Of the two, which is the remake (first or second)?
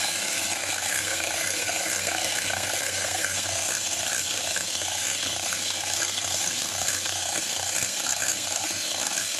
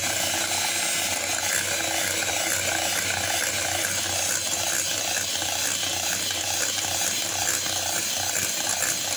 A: first